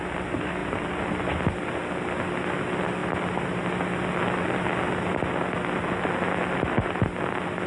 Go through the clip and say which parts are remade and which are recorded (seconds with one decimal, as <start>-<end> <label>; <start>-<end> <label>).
0.0-7.7 recorded